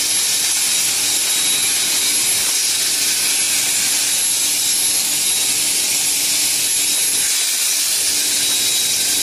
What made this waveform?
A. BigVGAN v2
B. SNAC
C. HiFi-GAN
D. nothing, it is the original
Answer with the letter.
D